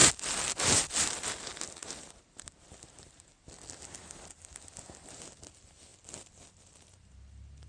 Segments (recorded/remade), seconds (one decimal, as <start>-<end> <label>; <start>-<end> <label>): 0.0-7.7 recorded